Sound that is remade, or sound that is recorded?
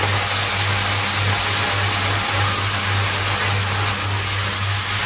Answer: recorded